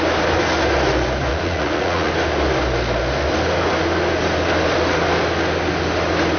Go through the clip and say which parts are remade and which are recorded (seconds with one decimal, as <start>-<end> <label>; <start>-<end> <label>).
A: 0.0-1.3 recorded; 1.3-2.1 remade; 2.1-6.4 recorded